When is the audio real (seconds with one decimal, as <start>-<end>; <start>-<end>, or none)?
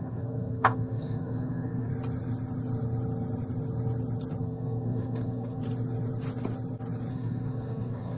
1.9-4.4; 5.6-7.1